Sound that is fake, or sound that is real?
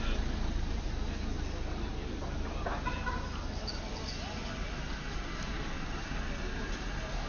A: real